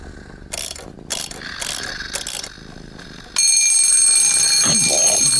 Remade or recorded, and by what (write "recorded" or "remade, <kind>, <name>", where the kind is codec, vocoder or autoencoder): recorded